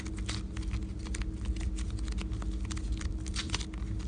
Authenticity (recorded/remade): recorded